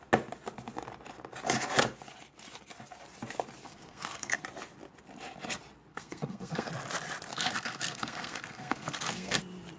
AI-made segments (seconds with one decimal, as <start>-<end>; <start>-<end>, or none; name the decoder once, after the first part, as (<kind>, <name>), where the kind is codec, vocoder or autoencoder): 3.6-4.4 (codec, SNAC); 5.9-6.7; 7.3-9.4